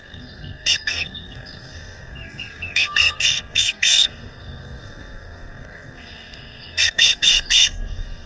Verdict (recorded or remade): remade